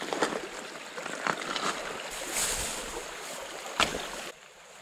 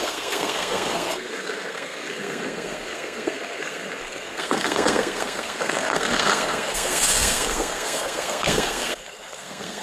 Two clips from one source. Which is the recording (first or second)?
first